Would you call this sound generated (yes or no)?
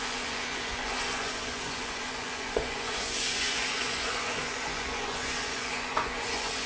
yes